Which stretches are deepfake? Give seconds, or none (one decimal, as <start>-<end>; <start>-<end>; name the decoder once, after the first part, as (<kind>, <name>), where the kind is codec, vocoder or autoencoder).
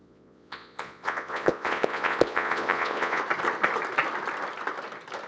0.0-3.2 (vocoder, Vocos)